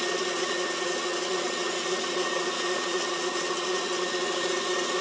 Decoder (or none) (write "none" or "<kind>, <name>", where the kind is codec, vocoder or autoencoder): vocoder, Vocos